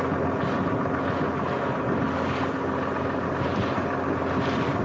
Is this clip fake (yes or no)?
no